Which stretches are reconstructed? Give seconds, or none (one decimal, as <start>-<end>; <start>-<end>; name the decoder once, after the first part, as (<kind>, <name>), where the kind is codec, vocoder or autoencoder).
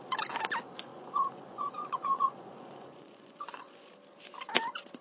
0.9-3.9 (vocoder, Vocos)